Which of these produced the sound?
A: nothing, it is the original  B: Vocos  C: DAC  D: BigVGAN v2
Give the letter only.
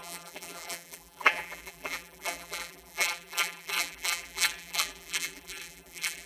D